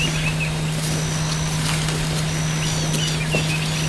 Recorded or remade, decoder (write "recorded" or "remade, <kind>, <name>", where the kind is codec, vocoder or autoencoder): recorded